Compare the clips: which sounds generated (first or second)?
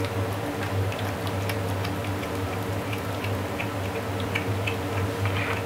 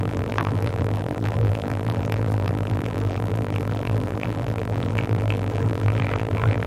second